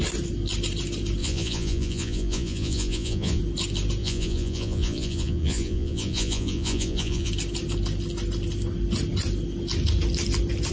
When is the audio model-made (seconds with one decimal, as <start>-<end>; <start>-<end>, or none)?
1.2-3.4; 4.0-7.3